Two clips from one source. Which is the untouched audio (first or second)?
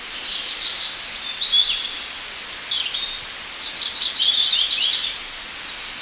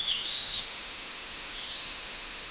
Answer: first